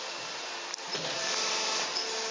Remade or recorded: recorded